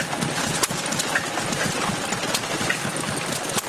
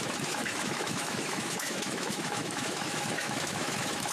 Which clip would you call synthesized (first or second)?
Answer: second